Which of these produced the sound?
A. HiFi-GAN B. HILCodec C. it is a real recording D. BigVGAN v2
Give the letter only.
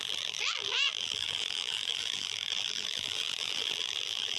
D